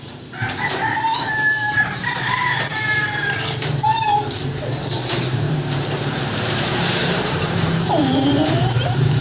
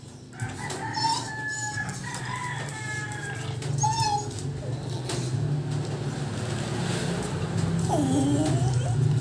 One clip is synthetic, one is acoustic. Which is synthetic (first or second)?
first